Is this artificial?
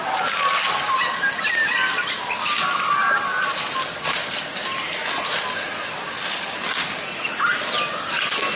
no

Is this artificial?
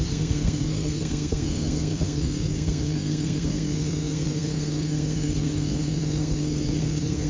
yes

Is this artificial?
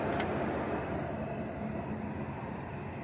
no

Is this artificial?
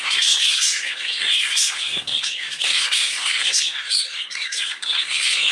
yes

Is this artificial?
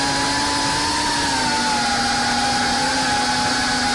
no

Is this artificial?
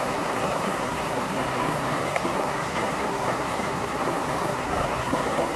yes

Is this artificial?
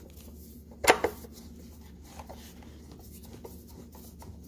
no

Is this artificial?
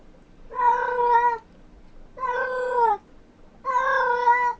no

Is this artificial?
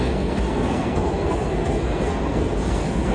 yes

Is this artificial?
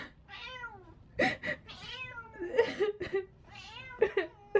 no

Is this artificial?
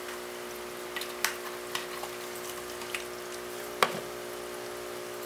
no